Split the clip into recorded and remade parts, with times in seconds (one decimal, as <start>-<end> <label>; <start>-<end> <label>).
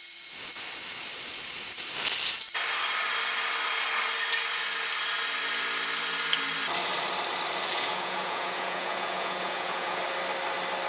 0.0-7.7 recorded; 7.7-10.0 remade; 10.0-10.9 recorded